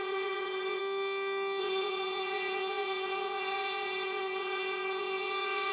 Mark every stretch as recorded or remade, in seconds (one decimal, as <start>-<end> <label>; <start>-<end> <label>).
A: 0.0-0.8 remade; 0.8-1.6 recorded; 1.6-5.7 remade